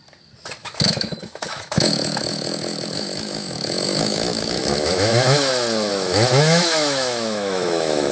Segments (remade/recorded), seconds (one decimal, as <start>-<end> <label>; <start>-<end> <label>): 0.0-0.6 recorded; 0.6-5.5 remade; 5.5-5.9 recorded; 5.9-8.1 remade